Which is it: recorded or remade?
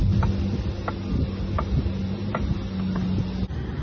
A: recorded